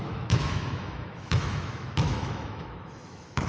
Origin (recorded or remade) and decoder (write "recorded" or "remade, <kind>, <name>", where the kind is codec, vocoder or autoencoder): remade, autoencoder, DAC-VAE